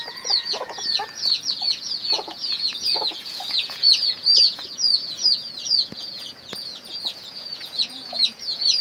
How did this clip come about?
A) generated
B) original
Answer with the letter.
A